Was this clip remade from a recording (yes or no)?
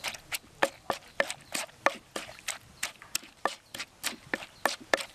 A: no